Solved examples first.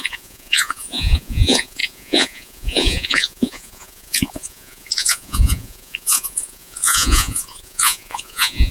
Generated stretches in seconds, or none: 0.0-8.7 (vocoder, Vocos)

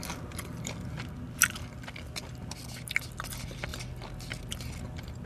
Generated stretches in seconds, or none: none

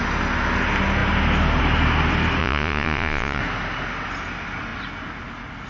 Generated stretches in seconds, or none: 2.4-3.4 (vocoder, Vocos)

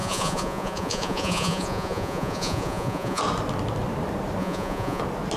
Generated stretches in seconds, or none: 0.0-3.2 (vocoder, Vocos); 4.4-5.0